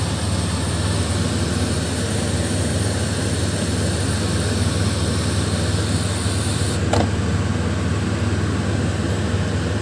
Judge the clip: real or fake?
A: real